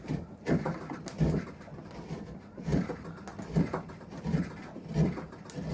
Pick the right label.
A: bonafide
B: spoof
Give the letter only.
A